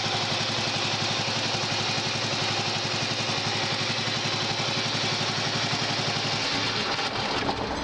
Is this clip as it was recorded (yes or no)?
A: yes